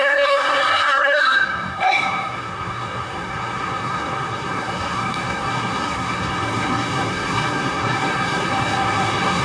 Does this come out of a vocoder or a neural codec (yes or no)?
yes